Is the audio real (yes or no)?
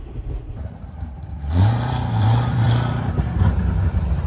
no